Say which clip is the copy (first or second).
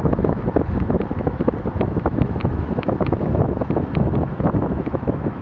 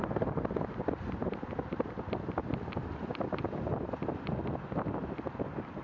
first